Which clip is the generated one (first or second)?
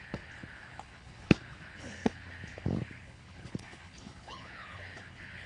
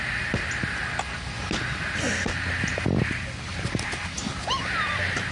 first